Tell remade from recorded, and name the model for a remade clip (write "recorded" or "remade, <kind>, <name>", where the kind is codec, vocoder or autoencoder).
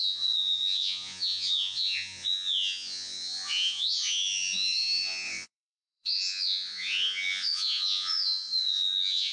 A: remade, vocoder, Vocos